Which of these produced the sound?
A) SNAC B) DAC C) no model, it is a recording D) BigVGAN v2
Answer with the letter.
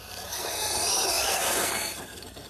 A